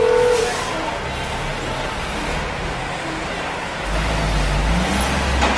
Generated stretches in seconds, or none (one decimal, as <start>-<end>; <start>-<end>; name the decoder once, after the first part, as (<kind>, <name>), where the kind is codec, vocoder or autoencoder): none